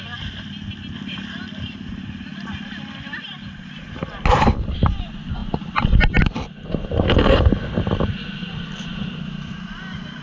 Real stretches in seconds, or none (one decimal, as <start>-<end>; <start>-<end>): 0.0-10.2